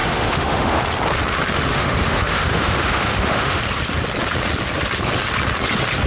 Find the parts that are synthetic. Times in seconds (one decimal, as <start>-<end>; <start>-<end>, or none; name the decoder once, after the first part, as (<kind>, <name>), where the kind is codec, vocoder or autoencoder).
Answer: 0.0-0.8 (autoencoder, DAC-VAE); 1.7-3.6